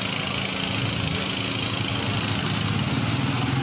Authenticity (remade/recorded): recorded